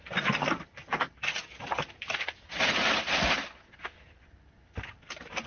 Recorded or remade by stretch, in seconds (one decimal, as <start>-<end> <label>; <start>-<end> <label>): 0.0-5.5 recorded